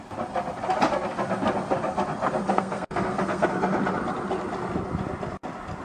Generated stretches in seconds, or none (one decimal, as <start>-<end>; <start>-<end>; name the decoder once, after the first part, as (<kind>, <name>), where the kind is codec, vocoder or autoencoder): 2.4-3.5 (codec, SNAC)